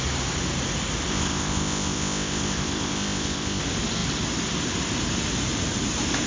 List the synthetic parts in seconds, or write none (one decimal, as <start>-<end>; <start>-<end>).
1.1-3.6